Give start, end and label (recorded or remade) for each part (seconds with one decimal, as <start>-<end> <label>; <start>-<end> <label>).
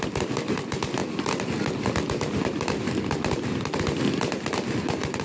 0.0-1.0 recorded; 1.0-4.1 remade; 4.1-5.2 recorded